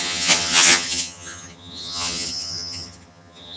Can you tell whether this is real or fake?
fake